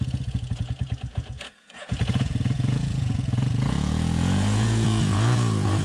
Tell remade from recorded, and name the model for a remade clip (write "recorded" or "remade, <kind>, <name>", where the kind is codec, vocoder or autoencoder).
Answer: remade, vocoder, Vocos